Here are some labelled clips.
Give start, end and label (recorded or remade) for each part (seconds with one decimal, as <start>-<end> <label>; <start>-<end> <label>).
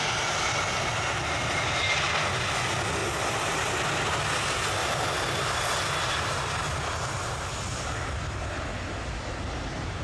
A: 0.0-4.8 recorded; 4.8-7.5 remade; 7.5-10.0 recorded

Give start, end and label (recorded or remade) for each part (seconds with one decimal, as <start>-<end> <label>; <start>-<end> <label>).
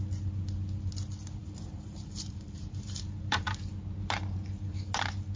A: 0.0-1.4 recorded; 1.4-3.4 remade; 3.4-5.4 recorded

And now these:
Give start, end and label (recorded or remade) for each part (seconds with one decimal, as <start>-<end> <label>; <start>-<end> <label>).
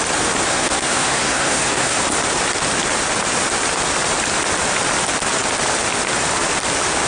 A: 0.0-0.5 recorded; 0.5-2.0 remade; 2.0-7.1 recorded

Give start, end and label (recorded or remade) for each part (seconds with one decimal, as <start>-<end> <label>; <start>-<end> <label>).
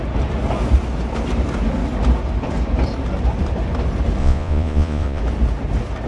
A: 0.0-4.2 recorded; 4.2-5.2 remade; 5.2-6.1 recorded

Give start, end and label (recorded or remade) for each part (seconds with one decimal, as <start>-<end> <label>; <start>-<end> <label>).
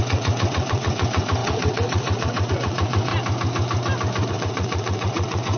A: 0.0-3.1 remade; 3.1-4.3 recorded; 4.3-5.6 remade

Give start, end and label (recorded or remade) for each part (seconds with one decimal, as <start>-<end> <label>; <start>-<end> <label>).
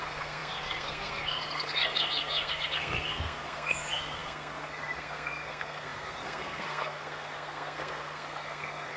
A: 0.0-9.0 remade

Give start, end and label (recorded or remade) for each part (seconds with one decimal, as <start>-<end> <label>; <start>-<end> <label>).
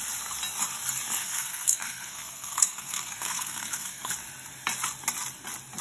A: 0.0-1.2 recorded; 1.2-4.1 remade; 4.1-5.8 recorded